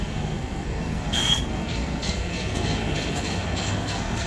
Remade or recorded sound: remade